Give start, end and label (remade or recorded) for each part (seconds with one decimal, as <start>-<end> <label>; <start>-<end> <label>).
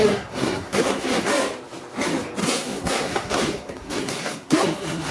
0.0-1.3 remade; 1.3-2.4 recorded; 2.4-5.1 remade